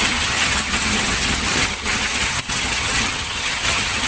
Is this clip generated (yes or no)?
yes